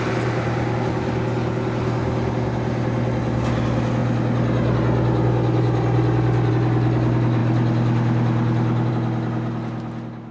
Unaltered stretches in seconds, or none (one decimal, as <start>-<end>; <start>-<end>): 0.0-10.3